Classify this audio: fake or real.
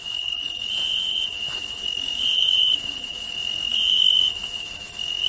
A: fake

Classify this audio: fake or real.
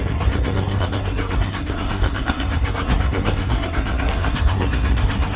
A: fake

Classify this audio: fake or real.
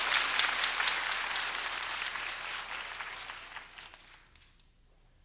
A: real